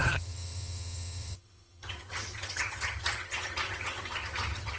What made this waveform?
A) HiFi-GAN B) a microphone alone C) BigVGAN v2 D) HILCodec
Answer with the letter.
A